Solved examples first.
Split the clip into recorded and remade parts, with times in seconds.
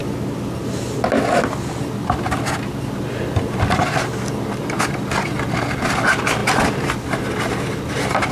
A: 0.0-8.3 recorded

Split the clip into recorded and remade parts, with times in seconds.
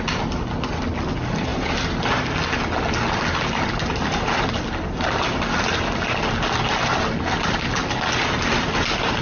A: 0.0-9.2 recorded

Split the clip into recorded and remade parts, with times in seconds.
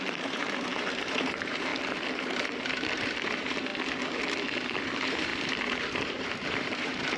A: 0.0-1.7 remade; 1.7-2.2 recorded; 2.2-3.7 remade; 3.7-4.8 recorded; 4.8-7.2 remade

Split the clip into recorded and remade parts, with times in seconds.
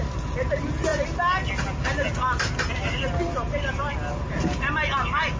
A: 0.0-5.4 recorded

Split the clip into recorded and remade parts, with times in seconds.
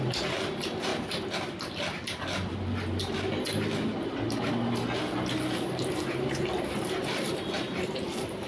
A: 0.0-0.9 remade; 0.9-5.9 recorded; 5.9-8.5 remade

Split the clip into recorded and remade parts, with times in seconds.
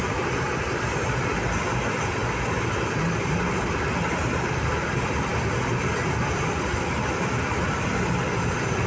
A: 0.0-8.9 recorded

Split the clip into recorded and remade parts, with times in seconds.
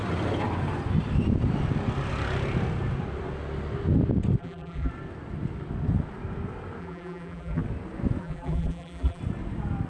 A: 0.0-4.4 recorded; 4.4-4.9 remade; 4.9-6.8 recorded; 6.8-7.6 remade; 7.6-8.2 recorded; 8.2-9.2 remade; 9.2-9.9 recorded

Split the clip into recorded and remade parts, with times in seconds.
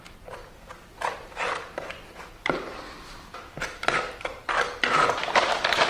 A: 0.0-0.9 recorded; 0.9-4.4 remade; 4.4-5.9 recorded